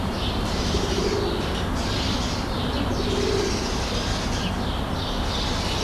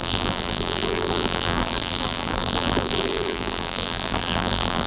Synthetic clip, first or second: second